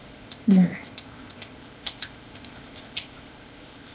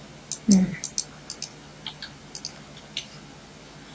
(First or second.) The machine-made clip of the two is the first